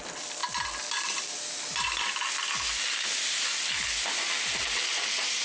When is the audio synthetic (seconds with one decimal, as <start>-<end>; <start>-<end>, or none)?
none